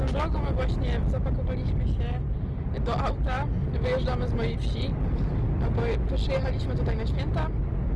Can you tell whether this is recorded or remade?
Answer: recorded